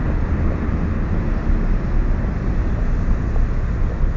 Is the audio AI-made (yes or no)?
no